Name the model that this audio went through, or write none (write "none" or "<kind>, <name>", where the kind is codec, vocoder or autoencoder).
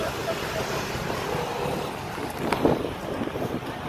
none